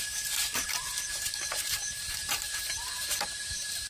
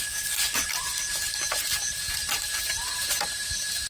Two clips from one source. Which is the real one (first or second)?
second